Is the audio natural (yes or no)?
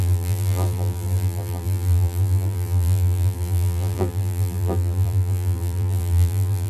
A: no